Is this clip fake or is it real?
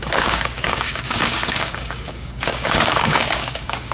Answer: fake